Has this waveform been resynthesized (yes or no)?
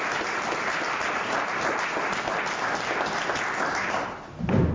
no